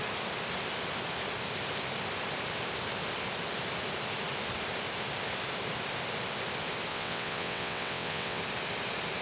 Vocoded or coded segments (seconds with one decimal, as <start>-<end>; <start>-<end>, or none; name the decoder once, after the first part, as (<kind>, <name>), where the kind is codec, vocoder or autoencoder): 6.9-8.4 (vocoder, WaveNeXt)